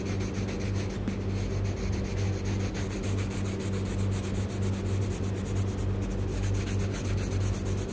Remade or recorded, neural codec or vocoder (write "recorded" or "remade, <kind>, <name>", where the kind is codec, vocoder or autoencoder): recorded